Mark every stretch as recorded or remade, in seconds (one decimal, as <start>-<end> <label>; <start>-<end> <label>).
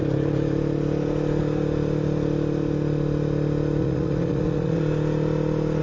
0.0-3.8 recorded; 3.8-4.8 remade; 4.8-5.8 recorded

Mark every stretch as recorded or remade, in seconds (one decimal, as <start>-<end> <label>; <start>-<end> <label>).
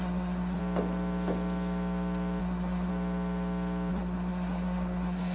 0.0-0.6 remade; 0.6-2.4 recorded; 2.4-2.9 remade; 2.9-3.9 recorded; 3.9-5.3 remade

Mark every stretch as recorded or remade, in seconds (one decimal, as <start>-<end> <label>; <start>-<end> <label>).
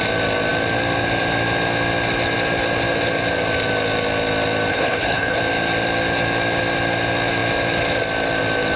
0.0-4.7 recorded; 4.7-5.4 remade; 5.4-8.8 recorded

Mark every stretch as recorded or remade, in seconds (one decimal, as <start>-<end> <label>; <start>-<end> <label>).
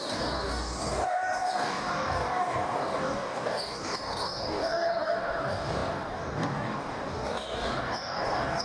0.0-8.6 remade